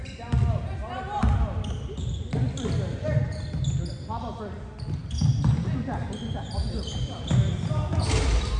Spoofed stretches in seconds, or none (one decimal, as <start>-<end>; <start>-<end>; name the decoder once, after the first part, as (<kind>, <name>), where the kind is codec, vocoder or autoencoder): 6.0-7.2 (vocoder, BigVGAN v2)